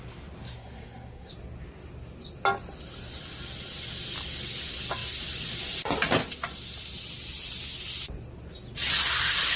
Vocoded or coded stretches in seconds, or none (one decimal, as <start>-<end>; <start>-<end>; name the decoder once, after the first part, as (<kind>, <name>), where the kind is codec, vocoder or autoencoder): 0.4-1.3 (codec, SNAC)